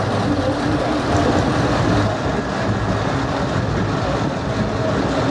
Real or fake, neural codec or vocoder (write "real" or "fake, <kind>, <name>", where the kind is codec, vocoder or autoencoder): real